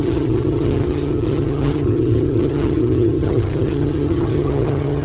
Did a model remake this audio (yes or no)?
yes